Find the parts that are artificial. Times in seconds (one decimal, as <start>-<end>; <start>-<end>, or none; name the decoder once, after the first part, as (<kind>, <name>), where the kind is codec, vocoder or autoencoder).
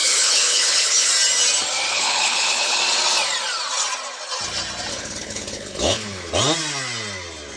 0.0-1.1 (codec, HILCodec); 1.9-2.8; 4.9-6.3